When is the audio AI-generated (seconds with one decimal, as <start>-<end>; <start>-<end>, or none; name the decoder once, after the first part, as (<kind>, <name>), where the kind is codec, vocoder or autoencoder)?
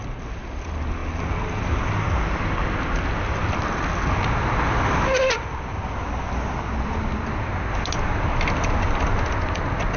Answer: none